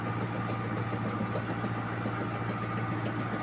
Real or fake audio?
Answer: real